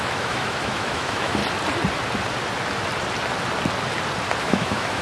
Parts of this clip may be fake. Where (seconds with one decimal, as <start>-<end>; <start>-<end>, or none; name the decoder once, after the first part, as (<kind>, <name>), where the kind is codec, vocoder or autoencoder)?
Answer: 0.0-1.4 (autoencoder, DAC-VAE); 4.4-5.0